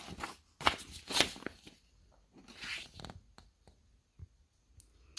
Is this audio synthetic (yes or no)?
no